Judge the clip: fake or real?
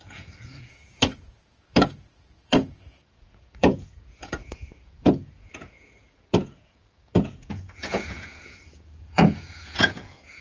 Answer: fake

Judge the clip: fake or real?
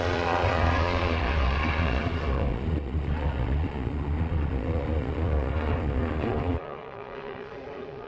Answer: fake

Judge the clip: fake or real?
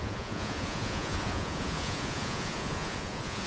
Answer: fake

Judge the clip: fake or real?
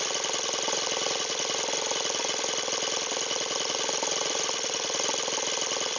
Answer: real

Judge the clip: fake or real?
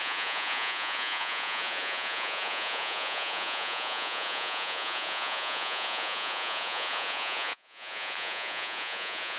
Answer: fake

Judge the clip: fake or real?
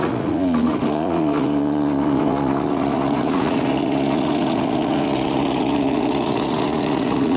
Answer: fake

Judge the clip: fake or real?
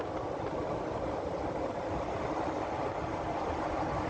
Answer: real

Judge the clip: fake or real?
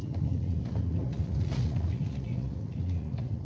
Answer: fake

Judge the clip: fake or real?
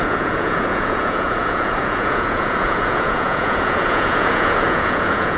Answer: fake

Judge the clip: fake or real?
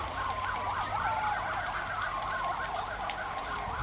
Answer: real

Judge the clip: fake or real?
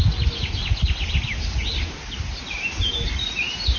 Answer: real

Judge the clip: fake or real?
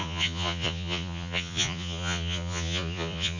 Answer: fake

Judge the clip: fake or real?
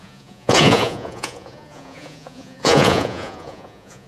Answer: fake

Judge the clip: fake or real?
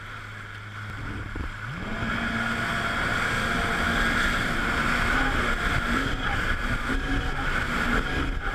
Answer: real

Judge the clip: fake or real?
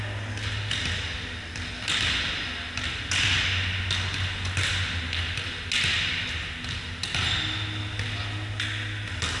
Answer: real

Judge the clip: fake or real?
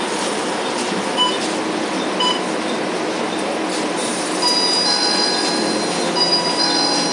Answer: real